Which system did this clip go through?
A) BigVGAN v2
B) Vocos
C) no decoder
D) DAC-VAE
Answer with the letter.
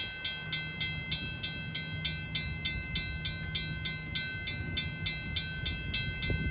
C